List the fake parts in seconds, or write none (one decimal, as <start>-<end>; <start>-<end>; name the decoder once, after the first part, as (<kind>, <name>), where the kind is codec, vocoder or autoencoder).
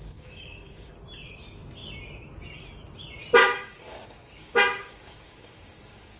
0.0-0.9 (codec, DAC); 3.4-6.2